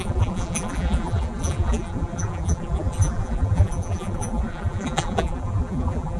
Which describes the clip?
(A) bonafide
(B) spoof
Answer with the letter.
B